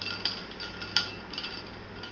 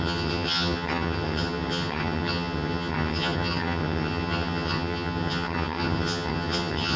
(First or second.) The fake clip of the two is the second